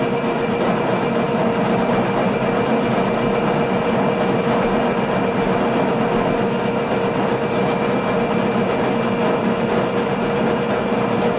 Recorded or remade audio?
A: recorded